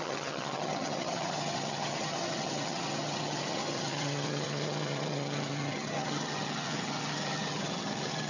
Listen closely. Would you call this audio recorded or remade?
remade